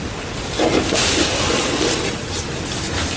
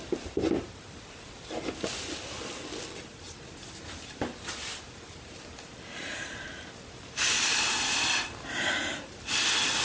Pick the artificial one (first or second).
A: second